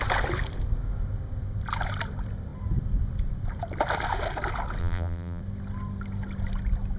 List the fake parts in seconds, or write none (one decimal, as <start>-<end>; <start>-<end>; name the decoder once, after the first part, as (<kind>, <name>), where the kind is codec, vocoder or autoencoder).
4.8-5.4 (vocoder, BigVGAN v2)